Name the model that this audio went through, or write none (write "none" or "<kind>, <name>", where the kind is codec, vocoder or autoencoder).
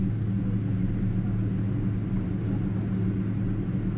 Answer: none